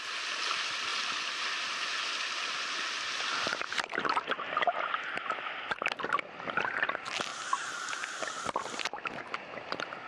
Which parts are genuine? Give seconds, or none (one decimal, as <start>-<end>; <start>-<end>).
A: 0.0-7.3; 8.2-10.1